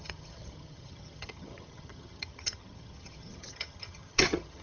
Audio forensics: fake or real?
fake